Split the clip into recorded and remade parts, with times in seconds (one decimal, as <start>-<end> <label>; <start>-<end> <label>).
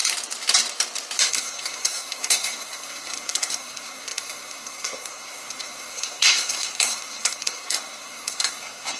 0.0-1.3 recorded; 1.3-9.0 remade